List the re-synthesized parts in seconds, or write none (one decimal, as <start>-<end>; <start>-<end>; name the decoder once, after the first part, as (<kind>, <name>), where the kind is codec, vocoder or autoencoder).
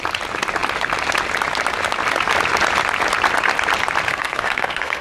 4.1-5.0 (codec, SNAC)